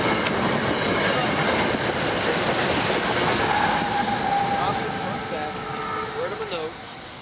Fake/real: real